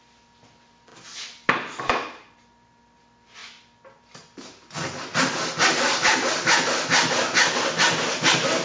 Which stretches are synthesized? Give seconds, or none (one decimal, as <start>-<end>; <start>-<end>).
none